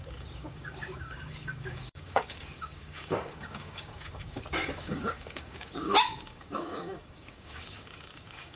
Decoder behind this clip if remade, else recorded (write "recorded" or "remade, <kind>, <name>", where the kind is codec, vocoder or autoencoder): remade, codec, DAC